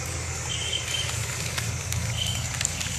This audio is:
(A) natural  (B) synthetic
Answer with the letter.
B